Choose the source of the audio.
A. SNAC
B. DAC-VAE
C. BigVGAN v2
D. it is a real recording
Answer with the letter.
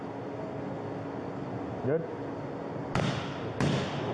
D